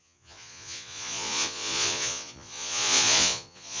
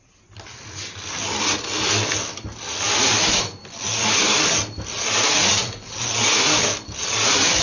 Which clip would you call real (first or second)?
second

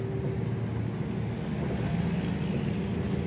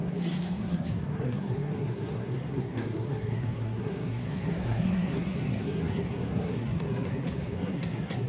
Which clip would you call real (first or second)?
first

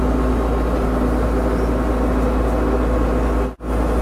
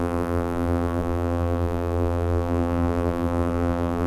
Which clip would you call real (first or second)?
first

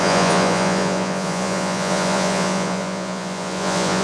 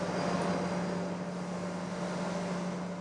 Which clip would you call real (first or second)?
second